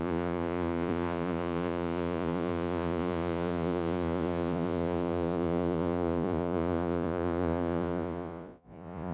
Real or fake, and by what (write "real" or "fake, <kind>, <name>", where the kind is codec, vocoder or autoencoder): fake, vocoder, Vocos